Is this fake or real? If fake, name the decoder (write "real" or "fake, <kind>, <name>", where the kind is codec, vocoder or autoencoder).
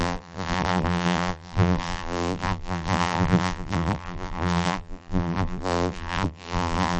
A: fake, vocoder, BigVGAN v2